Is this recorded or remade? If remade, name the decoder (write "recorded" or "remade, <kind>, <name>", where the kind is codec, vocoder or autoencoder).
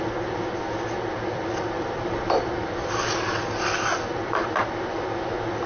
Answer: remade, vocoder, BigVGAN v2